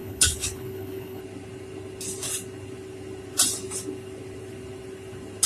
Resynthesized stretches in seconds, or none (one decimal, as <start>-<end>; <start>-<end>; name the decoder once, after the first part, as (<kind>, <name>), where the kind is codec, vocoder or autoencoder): 0.0-1.2 (codec, HILCodec)